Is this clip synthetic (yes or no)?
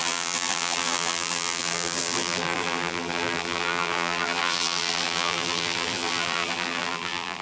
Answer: yes